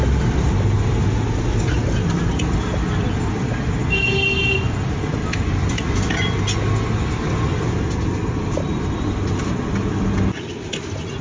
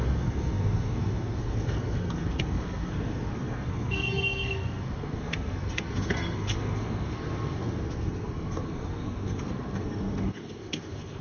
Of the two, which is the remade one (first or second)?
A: second